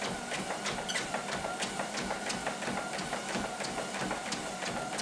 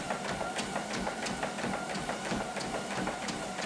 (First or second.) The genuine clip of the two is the first